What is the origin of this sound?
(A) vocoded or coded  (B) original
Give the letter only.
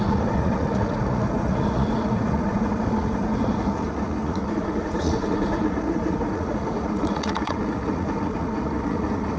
A